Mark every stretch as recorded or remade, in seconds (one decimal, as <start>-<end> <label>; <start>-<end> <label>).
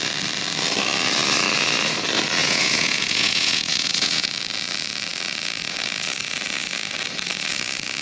0.0-2.4 recorded; 2.4-4.3 remade; 4.3-8.0 recorded